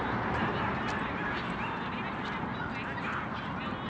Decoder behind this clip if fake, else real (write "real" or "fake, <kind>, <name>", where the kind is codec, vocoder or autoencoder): real